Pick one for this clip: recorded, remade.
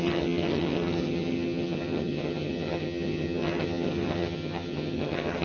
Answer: remade